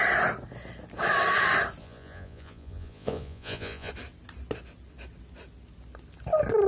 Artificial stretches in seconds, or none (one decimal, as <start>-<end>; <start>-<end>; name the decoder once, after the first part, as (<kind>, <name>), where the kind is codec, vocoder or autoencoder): 1.8-3.9 (vocoder, Vocos)